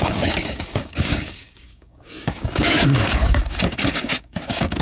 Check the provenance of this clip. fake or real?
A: fake